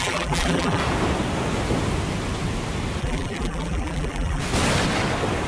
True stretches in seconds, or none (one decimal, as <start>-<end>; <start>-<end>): 0.8-3.0; 4.4-5.5